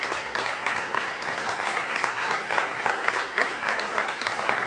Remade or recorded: remade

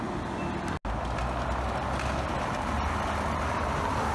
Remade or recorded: recorded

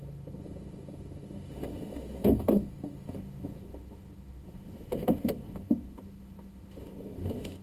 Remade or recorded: remade